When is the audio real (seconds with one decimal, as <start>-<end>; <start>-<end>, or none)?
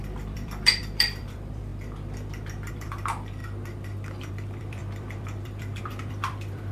1.7-2.7; 3.4-4.3